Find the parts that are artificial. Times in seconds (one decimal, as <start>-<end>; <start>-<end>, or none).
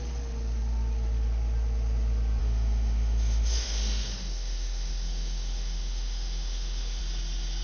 2.4-7.0